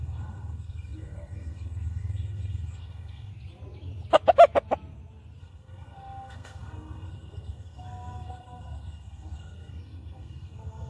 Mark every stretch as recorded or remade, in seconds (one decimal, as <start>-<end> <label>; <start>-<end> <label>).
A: 0.0-3.3 remade; 3.3-5.4 recorded; 5.4-10.9 remade

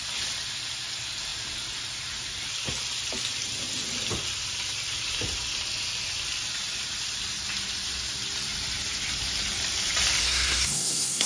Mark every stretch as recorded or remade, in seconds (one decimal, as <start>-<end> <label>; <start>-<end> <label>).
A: 0.0-10.2 recorded; 10.2-11.3 remade